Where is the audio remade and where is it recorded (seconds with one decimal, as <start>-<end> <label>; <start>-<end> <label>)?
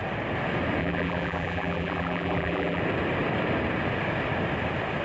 0.0-0.8 recorded; 0.8-2.8 remade; 2.8-5.0 recorded